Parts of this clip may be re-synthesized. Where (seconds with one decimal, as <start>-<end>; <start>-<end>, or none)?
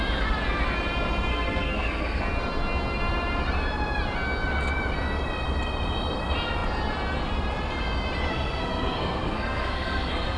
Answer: 1.3-2.2; 8.3-10.4